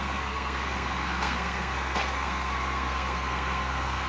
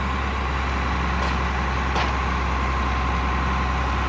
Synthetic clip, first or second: first